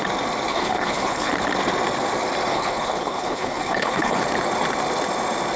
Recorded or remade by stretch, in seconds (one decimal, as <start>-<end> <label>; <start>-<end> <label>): 0.0-0.5 recorded; 0.5-1.3 remade; 1.3-2.5 recorded; 2.5-4.2 remade; 4.2-5.6 recorded